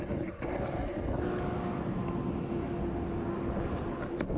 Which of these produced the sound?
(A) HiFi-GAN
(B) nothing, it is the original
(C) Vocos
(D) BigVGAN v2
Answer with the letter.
B